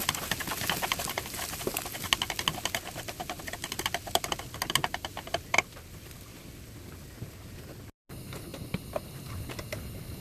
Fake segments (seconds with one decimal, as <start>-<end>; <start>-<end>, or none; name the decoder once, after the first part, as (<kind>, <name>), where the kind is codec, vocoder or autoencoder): none